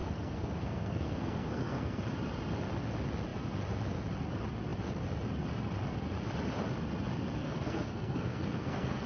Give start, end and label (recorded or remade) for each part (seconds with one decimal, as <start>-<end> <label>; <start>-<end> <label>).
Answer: 0.0-2.0 remade; 2.0-7.4 recorded; 7.4-9.1 remade